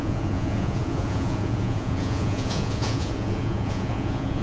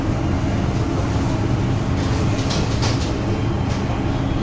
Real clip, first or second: second